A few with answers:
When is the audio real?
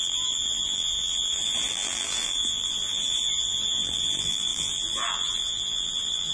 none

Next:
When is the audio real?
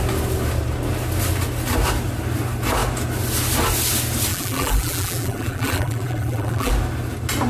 0.0-4.3; 6.7-7.5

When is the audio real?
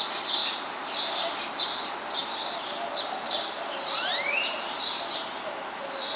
0.0-0.4; 1.1-2.2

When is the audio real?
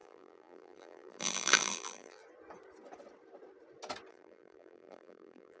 2.2-4.1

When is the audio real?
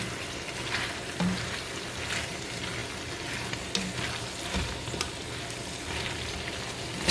0.0-7.1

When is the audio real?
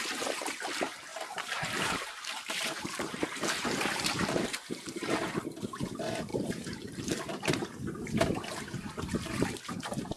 none